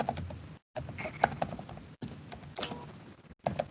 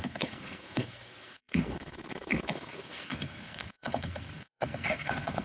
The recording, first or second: first